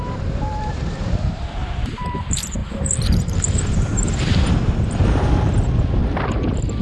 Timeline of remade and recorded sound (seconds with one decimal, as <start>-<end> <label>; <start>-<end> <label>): 0.0-6.0 remade; 6.0-6.8 recorded